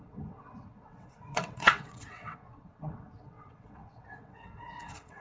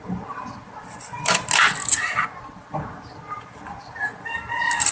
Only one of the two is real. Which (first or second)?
second